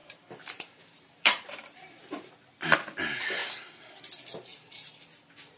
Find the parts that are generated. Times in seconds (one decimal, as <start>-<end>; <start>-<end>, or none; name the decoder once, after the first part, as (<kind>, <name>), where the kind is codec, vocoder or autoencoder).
0.0-2.3 (vocoder, BigVGAN v2); 4.5-5.0

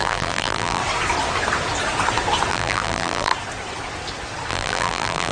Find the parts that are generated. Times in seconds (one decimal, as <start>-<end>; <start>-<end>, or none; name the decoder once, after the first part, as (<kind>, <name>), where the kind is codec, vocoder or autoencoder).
0.0-0.8 (vocoder, BigVGAN v2); 2.5-3.3; 4.5-5.3

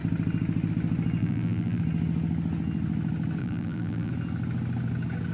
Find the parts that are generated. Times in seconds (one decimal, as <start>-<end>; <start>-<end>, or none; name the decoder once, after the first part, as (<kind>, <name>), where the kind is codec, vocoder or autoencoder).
1.2-1.8 (vocoder, BigVGAN v2); 3.4-4.1

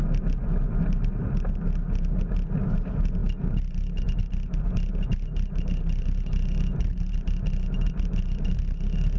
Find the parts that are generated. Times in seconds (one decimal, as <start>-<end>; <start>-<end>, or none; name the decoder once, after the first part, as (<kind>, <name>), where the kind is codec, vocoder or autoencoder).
none

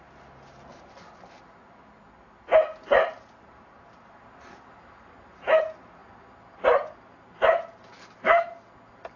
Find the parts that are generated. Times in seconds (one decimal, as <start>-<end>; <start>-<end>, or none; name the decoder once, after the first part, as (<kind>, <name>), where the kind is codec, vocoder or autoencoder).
none

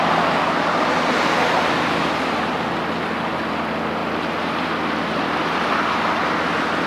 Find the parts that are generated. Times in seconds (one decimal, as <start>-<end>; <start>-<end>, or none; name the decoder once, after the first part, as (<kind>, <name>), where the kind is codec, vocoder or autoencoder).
4.0-6.0 (vocoder, BigVGAN v2)

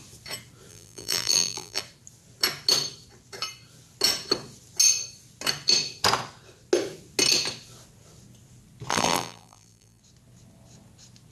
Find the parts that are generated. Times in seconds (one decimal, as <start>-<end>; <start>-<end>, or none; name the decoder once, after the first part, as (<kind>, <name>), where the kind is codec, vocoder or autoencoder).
0.7-1.8 (vocoder, BigVGAN v2); 8.9-10.0